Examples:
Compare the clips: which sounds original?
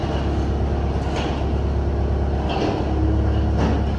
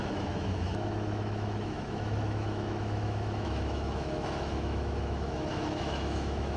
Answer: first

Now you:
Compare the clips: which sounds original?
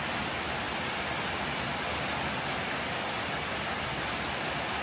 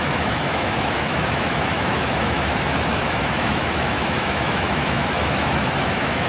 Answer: first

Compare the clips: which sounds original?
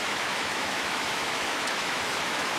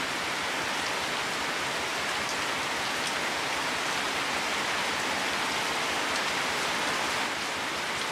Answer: second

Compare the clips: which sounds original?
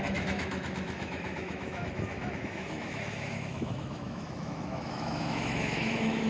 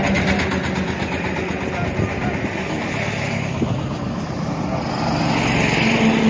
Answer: second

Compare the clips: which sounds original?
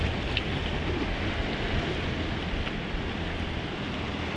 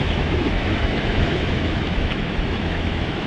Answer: first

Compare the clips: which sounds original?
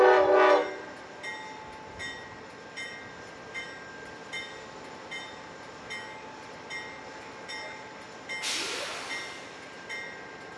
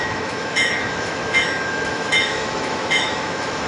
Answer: first